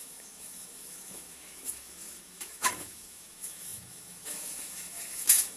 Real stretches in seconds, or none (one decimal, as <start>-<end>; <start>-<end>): none